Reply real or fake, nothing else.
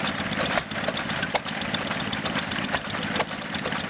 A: real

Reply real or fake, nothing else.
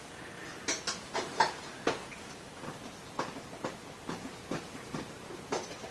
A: real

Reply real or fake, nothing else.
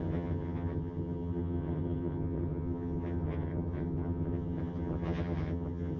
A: fake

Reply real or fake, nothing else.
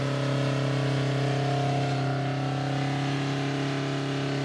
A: real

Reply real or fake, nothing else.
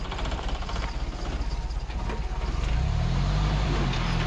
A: real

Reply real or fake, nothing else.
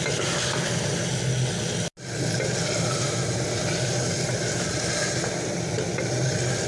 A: real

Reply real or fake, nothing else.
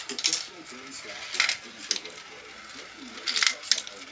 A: real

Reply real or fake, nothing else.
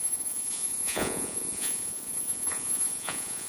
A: fake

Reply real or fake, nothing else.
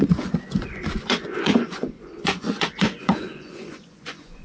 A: fake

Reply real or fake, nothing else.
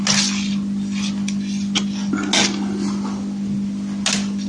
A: real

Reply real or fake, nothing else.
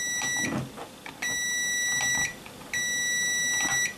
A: real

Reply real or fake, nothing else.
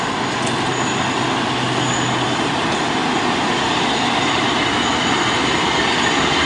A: real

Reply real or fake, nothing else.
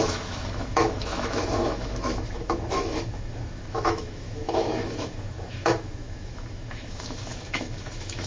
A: fake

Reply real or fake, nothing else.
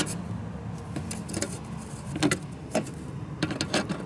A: real